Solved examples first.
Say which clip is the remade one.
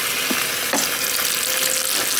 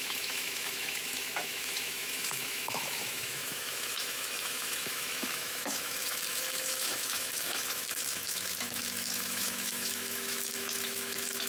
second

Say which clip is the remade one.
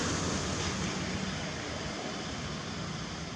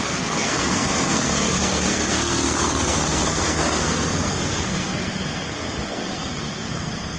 second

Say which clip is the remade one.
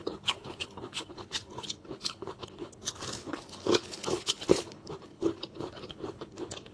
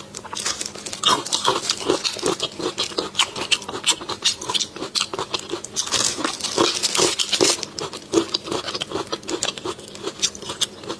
first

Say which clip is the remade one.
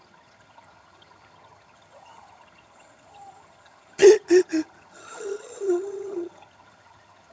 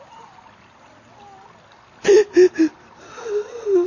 first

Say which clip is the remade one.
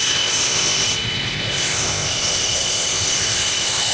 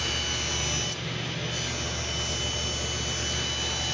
first